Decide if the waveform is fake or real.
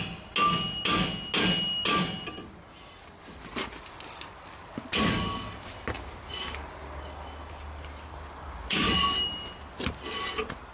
real